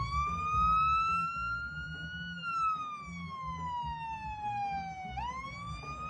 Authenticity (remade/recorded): recorded